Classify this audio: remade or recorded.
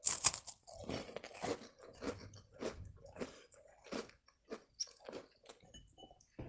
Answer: recorded